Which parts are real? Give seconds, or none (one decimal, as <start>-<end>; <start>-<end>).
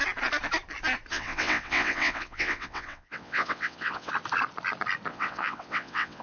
0.0-1.1; 4.1-5.1